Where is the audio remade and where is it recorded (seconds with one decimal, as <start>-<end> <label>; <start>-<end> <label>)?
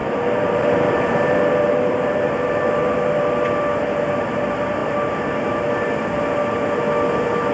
0.0-3.2 remade; 3.2-7.5 recorded